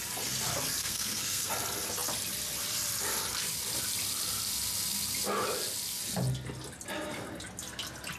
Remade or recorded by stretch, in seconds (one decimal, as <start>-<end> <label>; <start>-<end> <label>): 0.0-0.8 recorded; 0.8-1.5 remade; 1.5-8.2 recorded